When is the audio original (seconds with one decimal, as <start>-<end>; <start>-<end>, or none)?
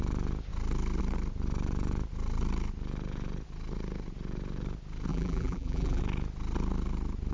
0.0-5.1; 6.0-7.3